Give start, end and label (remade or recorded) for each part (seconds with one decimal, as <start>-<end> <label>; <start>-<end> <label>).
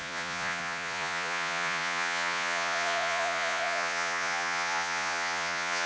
0.0-5.9 remade